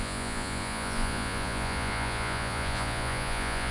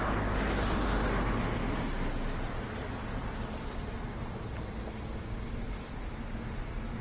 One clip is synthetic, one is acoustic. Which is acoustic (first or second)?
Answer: second